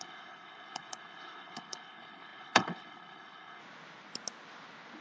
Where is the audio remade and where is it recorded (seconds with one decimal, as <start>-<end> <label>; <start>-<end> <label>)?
0.0-3.6 remade; 3.6-5.0 recorded